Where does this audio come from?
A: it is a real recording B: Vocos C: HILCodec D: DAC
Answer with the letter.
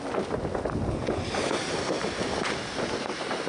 A